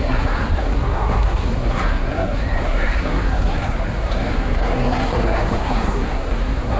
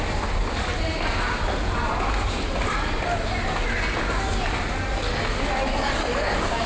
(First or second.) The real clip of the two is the second